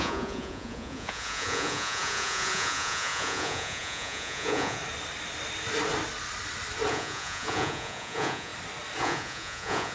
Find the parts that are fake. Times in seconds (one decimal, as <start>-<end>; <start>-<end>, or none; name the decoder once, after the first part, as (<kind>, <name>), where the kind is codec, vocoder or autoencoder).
0.0-4.8 (vocoder, Vocos); 6.9-8.5; 9.0-9.9